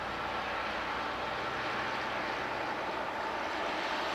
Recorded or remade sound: recorded